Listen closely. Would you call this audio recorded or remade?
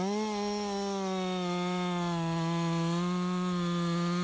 recorded